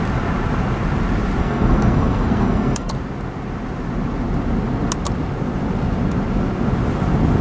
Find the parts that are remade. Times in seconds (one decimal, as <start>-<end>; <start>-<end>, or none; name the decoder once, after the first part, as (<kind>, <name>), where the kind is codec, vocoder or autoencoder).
1.4-2.9 (codec, SNAC)